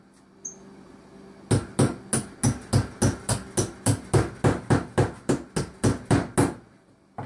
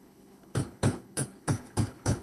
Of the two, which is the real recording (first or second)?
first